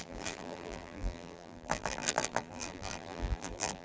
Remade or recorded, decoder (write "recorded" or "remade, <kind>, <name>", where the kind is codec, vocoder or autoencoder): remade, vocoder, BigVGAN v2